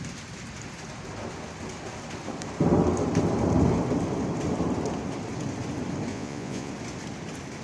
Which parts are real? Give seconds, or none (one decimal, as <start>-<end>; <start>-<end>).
0.0-6.1; 6.7-7.6